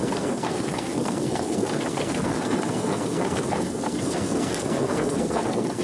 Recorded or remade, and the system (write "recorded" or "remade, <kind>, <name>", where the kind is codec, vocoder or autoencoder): remade, codec, SNAC